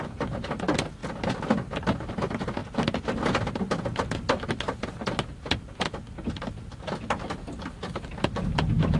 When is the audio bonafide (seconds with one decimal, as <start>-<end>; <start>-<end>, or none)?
0.0-9.0